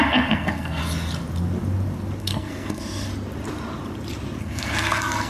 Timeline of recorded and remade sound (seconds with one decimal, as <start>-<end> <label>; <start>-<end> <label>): 0.0-0.8 remade; 0.8-2.2 recorded; 2.2-3.1 remade; 3.1-4.4 recorded; 4.4-5.3 remade